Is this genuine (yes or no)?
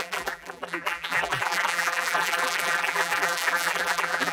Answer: no